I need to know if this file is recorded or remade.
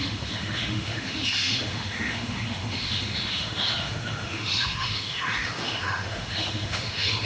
remade